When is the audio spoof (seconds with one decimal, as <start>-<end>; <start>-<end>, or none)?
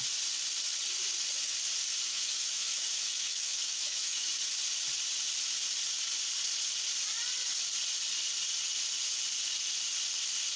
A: 2.0-4.3